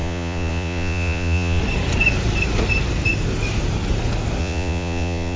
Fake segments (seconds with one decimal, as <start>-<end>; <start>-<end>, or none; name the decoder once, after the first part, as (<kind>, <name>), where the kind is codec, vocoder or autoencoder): 0.0-1.6 (vocoder, Vocos); 4.4-5.4

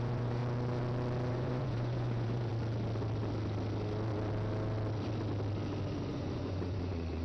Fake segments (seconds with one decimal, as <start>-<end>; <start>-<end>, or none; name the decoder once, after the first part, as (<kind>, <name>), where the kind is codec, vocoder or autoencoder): 0.0-0.4 (vocoder, Vocos); 1.3-2.5; 6.1-7.2

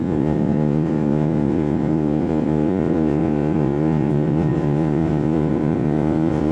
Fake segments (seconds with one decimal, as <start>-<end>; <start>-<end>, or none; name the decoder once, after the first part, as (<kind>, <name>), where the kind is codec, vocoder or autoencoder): 0.0-6.5 (vocoder, Vocos)

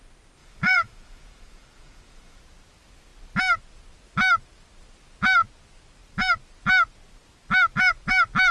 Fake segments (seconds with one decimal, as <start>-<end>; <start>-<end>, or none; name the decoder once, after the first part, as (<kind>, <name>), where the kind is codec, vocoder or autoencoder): 0.4-2.4 (vocoder, Vocos)

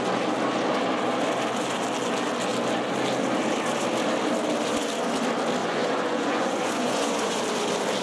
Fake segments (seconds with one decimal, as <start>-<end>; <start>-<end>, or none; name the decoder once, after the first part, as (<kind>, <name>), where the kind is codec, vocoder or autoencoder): 5.6-7.4 (vocoder, Vocos)

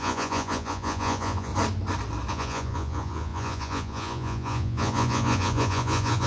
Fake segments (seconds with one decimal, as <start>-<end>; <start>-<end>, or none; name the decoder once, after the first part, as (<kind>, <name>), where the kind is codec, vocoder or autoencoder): 0.0-1.5 (vocoder, Vocos); 2.3-6.3

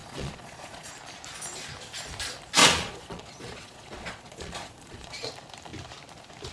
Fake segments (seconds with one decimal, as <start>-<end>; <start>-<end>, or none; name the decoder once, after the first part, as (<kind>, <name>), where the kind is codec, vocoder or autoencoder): 0.0-0.9 (vocoder, Vocos); 2.6-5.3